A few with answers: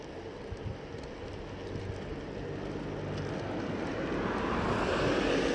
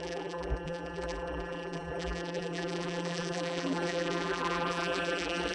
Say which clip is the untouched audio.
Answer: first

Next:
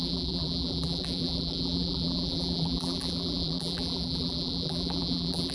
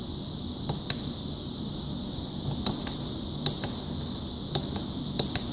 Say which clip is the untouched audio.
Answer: second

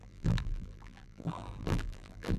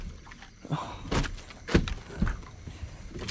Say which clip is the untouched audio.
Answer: second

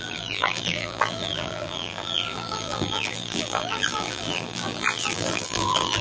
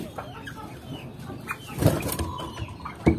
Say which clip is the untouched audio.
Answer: second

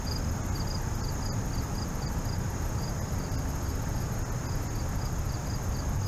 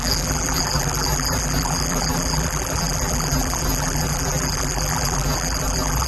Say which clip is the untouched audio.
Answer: first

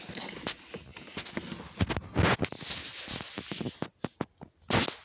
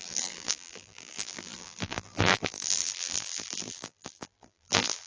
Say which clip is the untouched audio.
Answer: first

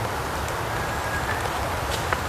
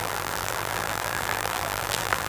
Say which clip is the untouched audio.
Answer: first